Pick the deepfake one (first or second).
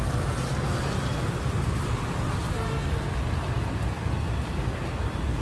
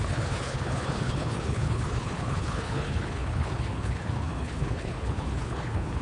second